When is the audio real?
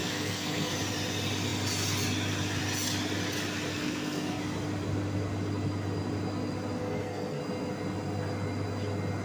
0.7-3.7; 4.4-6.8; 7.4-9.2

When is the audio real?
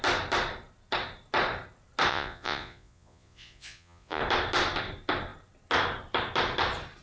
0.0-2.1; 4.2-7.0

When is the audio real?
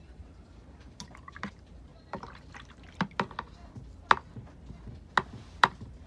1.9-5.6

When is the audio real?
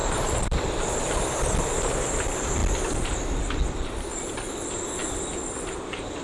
0.6-6.2